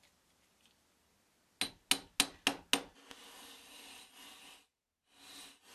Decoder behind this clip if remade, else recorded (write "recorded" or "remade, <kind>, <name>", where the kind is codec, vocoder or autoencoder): recorded